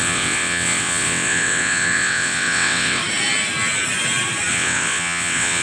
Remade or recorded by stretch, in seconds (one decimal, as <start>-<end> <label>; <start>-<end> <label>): 0.0-3.0 remade; 3.0-4.5 recorded; 4.5-5.6 remade